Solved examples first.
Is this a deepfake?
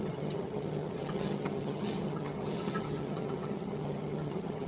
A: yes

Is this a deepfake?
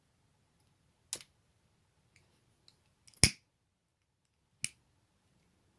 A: no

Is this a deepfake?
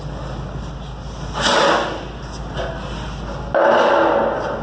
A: no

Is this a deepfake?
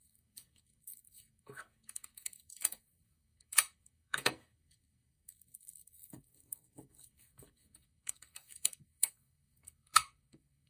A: yes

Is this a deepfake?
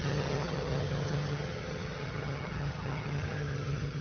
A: yes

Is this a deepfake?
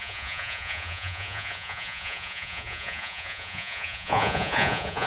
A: yes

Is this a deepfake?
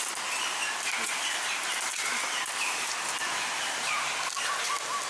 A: no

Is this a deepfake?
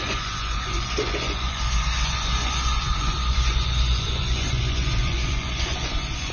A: yes